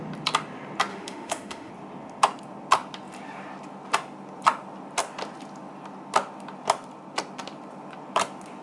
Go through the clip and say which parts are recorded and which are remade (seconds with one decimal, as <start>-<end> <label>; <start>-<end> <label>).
0.0-0.9 recorded; 0.9-1.7 remade; 1.7-8.6 recorded